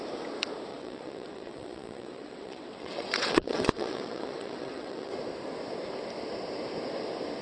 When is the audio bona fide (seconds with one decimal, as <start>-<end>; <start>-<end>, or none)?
0.0-0.7; 5.1-7.4